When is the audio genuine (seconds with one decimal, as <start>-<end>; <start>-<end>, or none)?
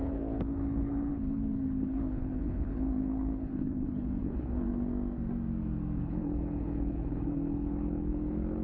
4.9-6.0